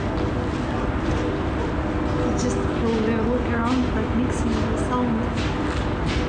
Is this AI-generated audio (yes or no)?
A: no